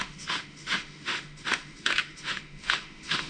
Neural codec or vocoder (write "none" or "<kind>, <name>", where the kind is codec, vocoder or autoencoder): autoencoder, DAC-VAE